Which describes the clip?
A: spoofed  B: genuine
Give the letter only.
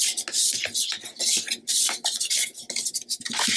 B